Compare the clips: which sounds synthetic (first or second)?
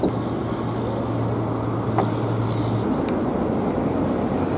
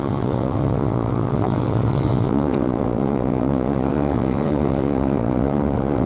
second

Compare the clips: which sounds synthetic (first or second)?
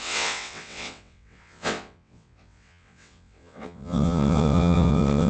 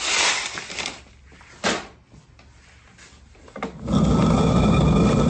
first